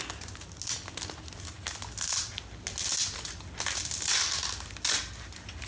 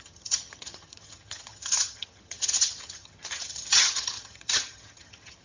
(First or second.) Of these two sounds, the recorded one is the first